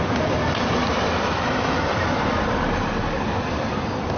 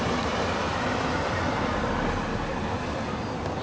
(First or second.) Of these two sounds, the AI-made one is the first